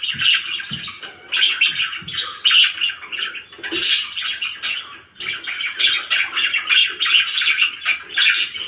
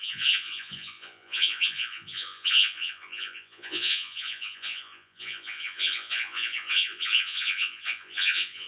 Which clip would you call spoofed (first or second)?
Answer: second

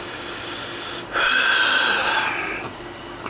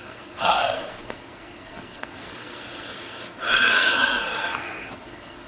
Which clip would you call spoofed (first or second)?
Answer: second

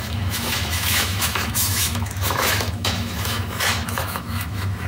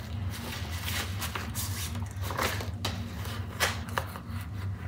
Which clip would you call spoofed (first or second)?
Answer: first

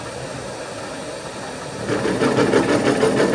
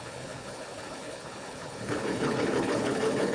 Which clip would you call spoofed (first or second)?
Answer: second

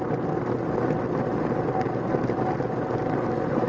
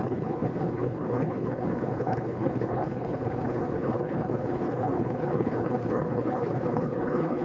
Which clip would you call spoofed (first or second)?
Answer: second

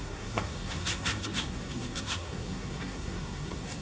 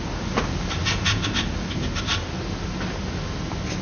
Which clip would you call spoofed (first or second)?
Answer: first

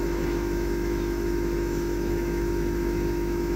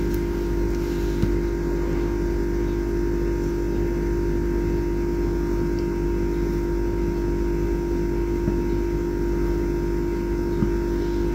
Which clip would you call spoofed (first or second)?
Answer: first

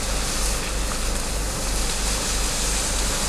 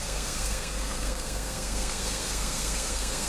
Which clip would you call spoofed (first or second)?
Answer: second